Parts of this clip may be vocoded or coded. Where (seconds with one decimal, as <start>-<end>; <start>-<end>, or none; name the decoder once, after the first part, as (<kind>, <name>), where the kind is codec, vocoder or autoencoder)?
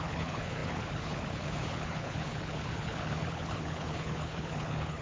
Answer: 0.0-5.0 (codec, HILCodec)